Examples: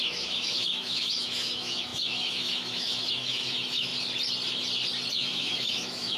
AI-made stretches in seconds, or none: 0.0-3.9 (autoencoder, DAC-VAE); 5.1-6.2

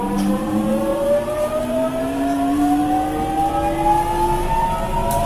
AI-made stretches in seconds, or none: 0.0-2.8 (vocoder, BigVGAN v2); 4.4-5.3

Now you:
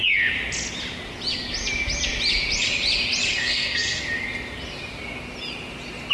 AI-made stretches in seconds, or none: 3.3-4.0 (codec, SNAC)

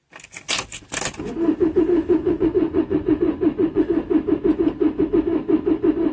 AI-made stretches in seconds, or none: 2.2-3.8 (vocoder, Vocos)

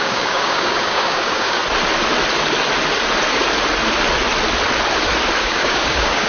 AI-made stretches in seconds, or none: 0.0-1.6 (codec, DAC); 5.4-6.3